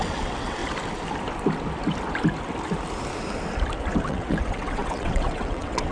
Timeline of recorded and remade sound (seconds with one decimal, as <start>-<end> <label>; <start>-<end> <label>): 0.0-0.6 remade; 0.6-4.1 recorded; 4.1-5.9 remade